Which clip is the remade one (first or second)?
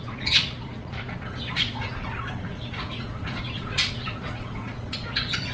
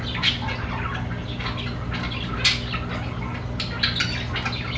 first